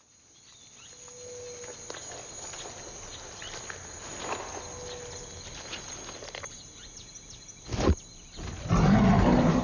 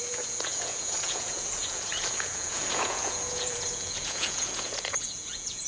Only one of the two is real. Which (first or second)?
first